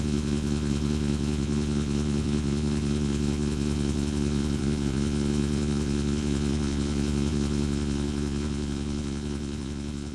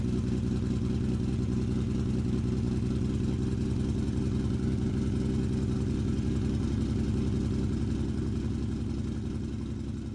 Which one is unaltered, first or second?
second